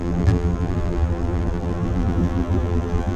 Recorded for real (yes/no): no